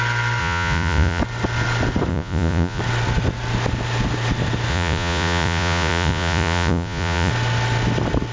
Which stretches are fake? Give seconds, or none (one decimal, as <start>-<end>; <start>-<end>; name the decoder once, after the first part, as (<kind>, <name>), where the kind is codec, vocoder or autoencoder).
0.4-1.2 (vocoder, Vocos); 2.1-2.8; 4.7-7.3